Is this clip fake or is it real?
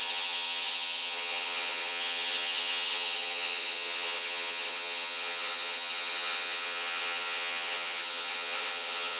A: fake